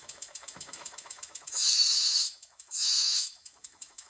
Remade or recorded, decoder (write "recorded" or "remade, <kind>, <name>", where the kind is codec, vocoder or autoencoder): remade, autoencoder, DAC-VAE